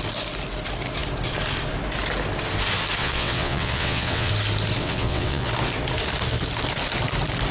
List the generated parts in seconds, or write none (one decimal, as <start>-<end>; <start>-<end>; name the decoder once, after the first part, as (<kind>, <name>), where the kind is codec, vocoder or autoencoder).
3.0-4.3 (vocoder, WaveNeXt); 4.8-5.5